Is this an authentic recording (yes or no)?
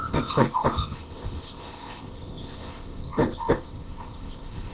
no